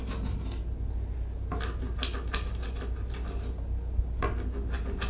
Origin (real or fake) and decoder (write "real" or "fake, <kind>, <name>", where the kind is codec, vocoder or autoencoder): real